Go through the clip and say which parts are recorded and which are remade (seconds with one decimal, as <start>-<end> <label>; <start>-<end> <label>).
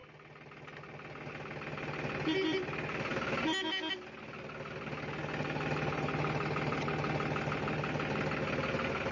0.0-9.1 recorded